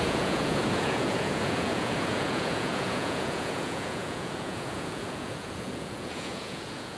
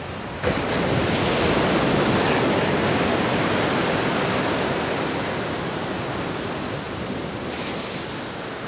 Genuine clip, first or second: second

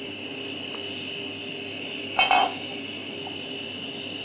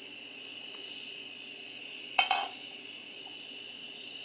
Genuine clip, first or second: first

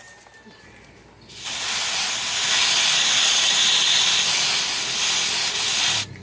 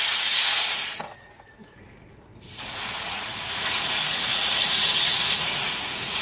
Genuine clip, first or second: first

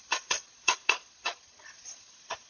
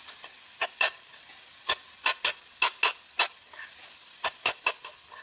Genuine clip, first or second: second